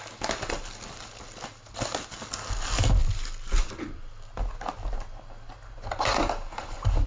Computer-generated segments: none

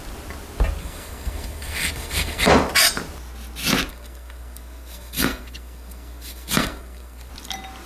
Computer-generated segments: 0.8-2.5 (codec, SNAC); 3.9-7.3